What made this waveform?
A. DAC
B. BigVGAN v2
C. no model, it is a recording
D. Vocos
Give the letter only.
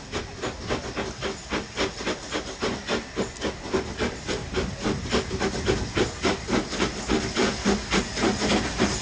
C